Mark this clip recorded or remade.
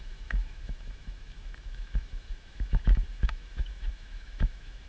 remade